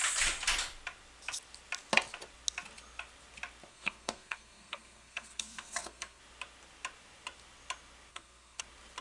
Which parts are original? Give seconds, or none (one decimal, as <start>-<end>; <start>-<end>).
0.0-3.7; 6.2-8.1; 8.6-9.0